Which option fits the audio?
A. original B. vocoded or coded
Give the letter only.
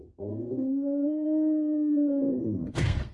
B